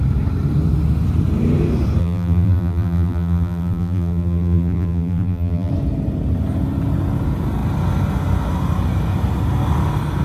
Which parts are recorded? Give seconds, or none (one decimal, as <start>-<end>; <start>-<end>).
0.0-2.0; 5.7-10.2